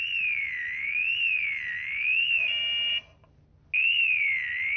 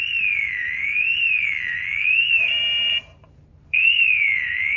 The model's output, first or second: second